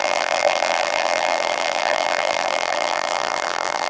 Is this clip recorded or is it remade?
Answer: remade